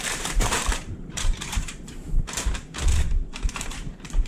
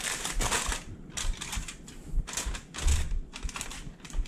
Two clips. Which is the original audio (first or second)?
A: second